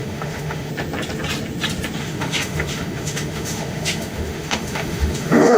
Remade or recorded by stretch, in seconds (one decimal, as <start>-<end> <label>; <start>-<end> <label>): 0.0-0.7 remade; 0.7-2.0 recorded; 2.0-5.6 remade